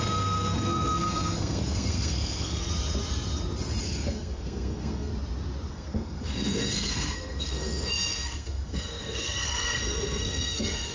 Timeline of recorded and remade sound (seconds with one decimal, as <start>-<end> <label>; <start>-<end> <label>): 0.0-2.7 remade; 2.7-3.8 recorded; 3.8-5.1 remade; 5.1-5.7 recorded; 5.7-10.9 remade